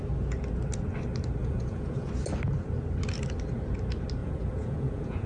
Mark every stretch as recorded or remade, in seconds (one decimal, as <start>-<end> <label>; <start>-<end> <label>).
0.0-1.4 recorded; 1.4-2.1 remade; 2.1-4.2 recorded; 4.2-5.3 remade

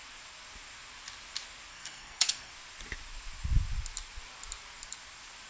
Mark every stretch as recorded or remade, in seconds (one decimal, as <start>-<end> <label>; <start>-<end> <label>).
0.0-1.7 recorded; 1.7-2.5 remade; 2.5-5.5 recorded

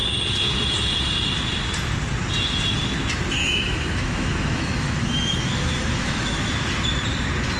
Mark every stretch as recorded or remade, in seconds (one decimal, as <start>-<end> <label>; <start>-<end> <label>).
0.0-3.4 recorded; 3.4-6.5 remade; 6.5-7.6 recorded

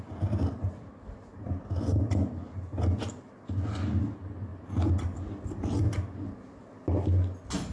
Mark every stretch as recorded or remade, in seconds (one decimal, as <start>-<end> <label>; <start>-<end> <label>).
0.0-7.7 recorded

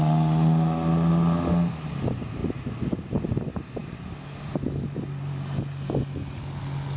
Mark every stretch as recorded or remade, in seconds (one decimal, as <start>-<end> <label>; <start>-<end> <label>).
0.0-7.0 recorded

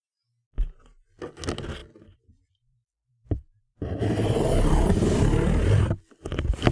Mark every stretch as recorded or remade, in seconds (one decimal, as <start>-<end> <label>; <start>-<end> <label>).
0.0-1.8 recorded; 1.8-5.8 remade; 5.8-6.7 recorded

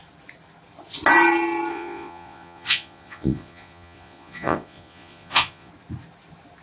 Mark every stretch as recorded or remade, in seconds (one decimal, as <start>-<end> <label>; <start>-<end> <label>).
0.0-1.7 recorded; 1.7-5.7 remade; 5.7-6.6 recorded